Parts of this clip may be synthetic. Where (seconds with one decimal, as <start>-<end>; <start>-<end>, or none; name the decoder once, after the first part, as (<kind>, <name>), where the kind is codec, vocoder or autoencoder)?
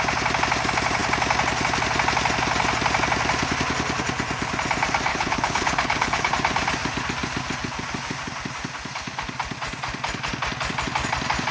5.1-6.3 (codec, HILCodec)